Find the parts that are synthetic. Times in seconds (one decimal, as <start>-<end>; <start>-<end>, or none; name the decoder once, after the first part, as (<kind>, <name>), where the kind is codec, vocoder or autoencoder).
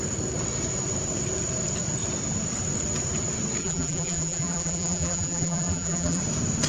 3.6-6.2 (vocoder, BigVGAN v2)